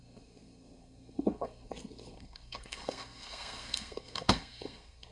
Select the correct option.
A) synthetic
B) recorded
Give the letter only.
A